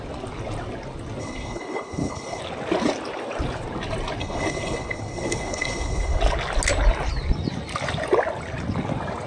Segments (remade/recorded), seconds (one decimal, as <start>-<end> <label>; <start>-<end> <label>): 0.0-1.2 recorded; 1.2-2.4 remade; 2.4-4.2 recorded; 4.2-6.2 remade; 6.2-9.3 recorded